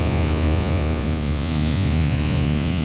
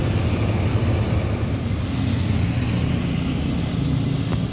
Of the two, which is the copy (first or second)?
first